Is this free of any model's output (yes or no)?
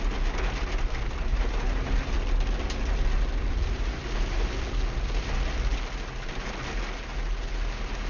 yes